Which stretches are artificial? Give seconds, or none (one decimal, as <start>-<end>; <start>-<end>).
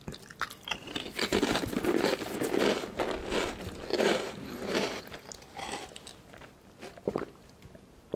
1.3-2.1; 3.9-5.0